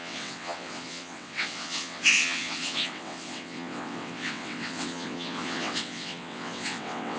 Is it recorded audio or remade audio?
remade